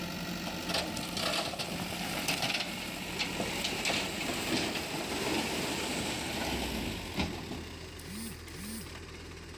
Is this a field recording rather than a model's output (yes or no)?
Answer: yes